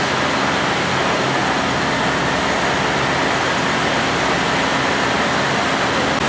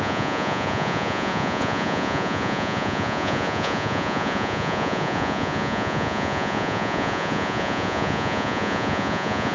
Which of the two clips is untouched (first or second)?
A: first